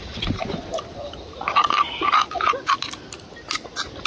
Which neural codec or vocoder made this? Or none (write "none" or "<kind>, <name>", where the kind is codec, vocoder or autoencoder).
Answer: none